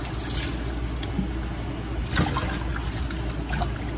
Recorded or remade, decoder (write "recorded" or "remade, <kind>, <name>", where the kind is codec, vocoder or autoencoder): recorded